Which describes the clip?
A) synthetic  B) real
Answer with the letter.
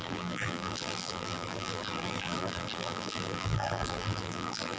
A